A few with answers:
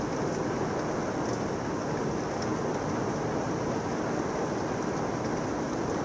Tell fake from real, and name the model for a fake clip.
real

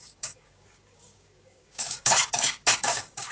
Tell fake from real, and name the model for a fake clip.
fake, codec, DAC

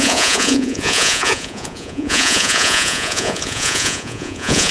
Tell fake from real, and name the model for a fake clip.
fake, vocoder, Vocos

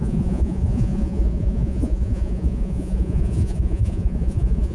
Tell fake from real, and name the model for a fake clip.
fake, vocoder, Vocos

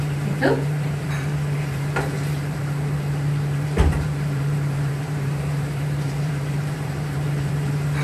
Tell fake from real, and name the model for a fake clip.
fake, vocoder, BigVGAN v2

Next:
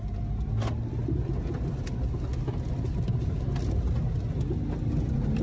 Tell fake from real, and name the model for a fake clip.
real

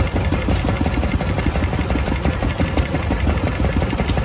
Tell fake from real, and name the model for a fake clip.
real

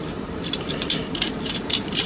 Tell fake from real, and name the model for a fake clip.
fake, vocoder, BigVGAN v2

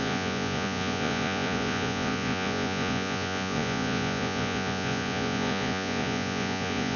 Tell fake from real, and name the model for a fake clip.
fake, vocoder, Vocos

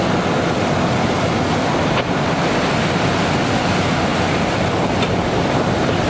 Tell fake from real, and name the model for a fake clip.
real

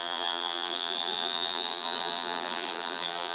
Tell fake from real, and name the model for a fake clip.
fake, vocoder, BigVGAN v2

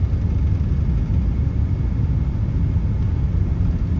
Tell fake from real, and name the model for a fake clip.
real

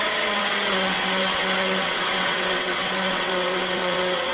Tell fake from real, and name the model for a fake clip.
fake, vocoder, WaveNeXt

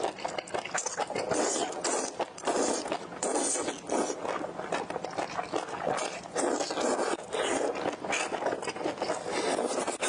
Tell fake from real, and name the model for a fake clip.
real